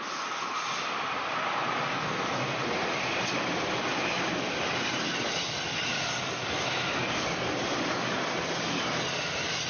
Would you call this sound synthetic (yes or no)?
no